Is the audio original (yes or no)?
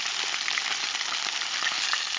yes